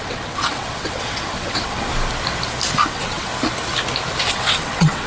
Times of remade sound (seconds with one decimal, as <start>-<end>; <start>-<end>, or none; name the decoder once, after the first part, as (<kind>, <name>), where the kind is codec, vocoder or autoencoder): 0.0-1.9 (vocoder, WaveNeXt); 2.8-3.3; 4.3-5.1